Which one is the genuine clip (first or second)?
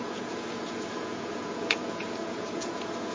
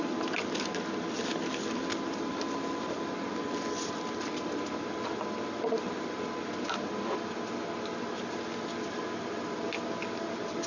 second